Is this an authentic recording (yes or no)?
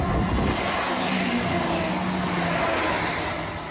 yes